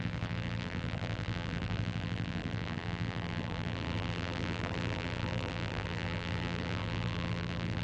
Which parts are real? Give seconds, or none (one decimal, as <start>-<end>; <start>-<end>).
none